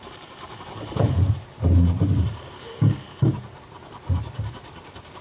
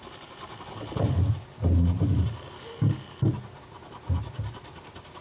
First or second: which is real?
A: second